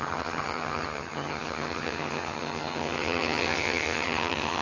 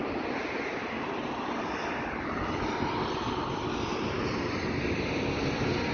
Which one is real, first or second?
second